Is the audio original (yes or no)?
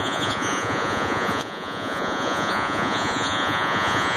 no